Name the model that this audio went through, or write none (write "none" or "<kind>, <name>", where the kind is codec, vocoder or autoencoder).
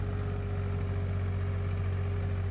none